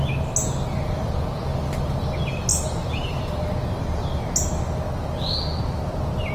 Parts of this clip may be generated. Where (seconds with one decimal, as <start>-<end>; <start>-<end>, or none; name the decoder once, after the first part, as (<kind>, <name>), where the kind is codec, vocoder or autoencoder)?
none